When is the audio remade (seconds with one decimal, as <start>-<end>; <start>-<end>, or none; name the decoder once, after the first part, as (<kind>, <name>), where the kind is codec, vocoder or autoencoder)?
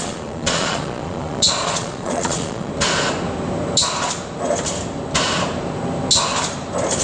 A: 0.0-2.7 (vocoder, Vocos)